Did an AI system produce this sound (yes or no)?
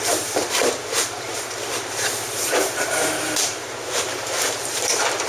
yes